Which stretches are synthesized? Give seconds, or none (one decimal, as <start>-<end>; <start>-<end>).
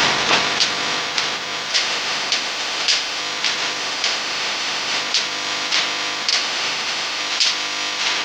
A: 1.7-3.2; 3.8-5.0; 6.3-7.2